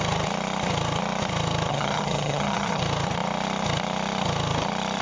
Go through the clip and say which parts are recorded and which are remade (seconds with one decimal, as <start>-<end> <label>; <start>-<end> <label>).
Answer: 0.0-1.7 recorded; 1.7-2.8 remade; 2.8-5.0 recorded

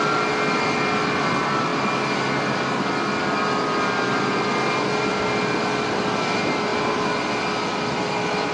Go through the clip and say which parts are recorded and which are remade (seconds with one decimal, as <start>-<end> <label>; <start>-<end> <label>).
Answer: 0.0-8.5 recorded

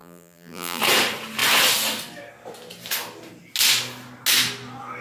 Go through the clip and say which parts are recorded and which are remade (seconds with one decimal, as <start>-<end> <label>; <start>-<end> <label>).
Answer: 0.0-0.8 remade; 0.8-5.0 recorded

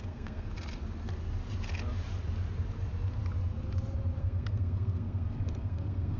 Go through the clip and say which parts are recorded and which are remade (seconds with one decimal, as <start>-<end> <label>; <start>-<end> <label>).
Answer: 0.0-0.5 remade; 0.5-4.2 recorded; 4.2-6.2 remade

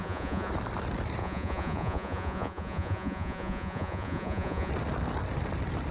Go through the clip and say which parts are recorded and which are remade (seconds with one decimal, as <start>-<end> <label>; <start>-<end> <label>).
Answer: 0.0-0.5 remade; 0.5-1.2 recorded; 1.2-4.7 remade; 4.7-5.9 recorded

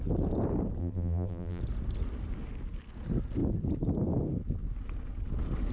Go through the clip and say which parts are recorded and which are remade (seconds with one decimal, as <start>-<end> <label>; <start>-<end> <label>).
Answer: 0.0-0.8 recorded; 0.8-1.6 remade; 1.6-5.7 recorded

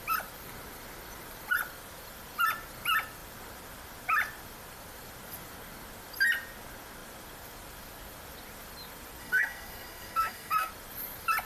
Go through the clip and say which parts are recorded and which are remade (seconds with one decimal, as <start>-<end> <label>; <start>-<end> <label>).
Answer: 0.0-9.2 recorded; 9.2-10.7 remade; 10.7-11.5 recorded

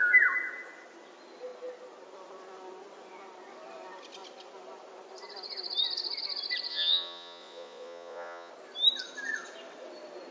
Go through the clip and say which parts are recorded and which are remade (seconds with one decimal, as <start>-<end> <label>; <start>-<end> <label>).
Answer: 0.0-6.7 recorded; 6.7-8.5 remade; 8.5-10.3 recorded